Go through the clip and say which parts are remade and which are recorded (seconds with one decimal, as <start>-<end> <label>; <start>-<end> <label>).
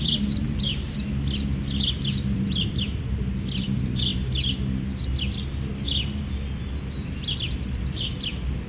0.0-8.7 recorded